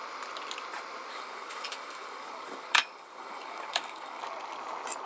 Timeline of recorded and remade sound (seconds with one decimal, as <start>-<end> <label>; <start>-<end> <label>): 0.0-1.1 recorded; 1.1-4.2 remade; 4.2-5.1 recorded